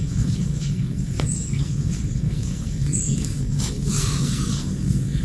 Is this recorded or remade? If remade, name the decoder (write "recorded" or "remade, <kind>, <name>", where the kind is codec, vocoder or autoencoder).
remade, codec, SNAC